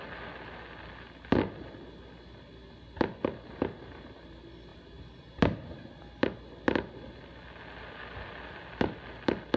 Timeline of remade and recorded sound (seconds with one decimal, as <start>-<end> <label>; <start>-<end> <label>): 0.0-4.7 recorded; 4.7-5.4 remade; 5.4-9.6 recorded